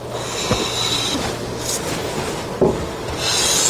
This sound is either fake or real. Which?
real